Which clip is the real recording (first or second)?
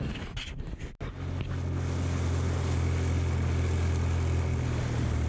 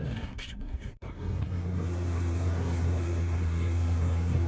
first